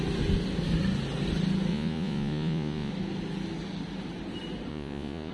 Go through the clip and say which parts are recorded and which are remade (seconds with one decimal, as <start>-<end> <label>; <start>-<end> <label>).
0.0-1.7 recorded; 1.7-2.9 remade; 2.9-4.7 recorded; 4.7-5.3 remade